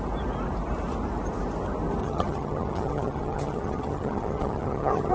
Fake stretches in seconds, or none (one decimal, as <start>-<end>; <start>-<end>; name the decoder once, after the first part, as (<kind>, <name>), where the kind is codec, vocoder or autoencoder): 2.0-5.1 (vocoder, HiFi-GAN)